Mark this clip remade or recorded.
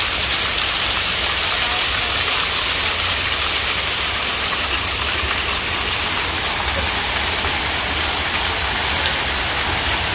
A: recorded